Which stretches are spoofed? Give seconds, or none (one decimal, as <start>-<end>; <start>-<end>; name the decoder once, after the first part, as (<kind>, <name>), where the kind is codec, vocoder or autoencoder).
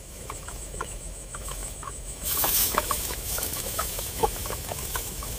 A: 0.0-5.4 (autoencoder, DAC-VAE)